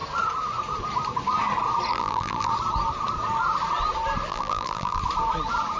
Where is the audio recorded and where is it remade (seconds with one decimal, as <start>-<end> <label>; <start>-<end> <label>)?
0.0-1.9 recorded; 1.9-2.5 remade; 2.5-4.3 recorded; 4.3-5.0 remade; 5.0-5.8 recorded